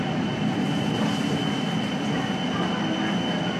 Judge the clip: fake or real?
real